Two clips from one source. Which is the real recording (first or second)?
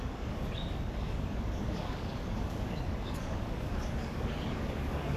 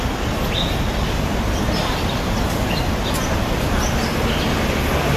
second